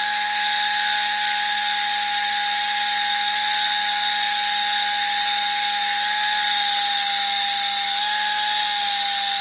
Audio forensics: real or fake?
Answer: real